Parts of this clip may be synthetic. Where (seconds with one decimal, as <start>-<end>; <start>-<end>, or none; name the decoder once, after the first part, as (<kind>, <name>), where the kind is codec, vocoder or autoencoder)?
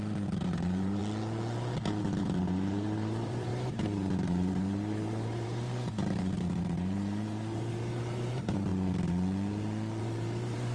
0.0-1.0 (vocoder, BigVGAN v2); 2.0-8.7; 10.0-10.7